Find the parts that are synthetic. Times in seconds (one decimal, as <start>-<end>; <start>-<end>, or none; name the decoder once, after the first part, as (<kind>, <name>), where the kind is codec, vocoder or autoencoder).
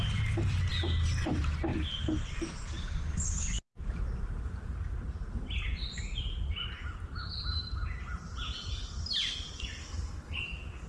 9.8-10.4 (codec, HILCodec)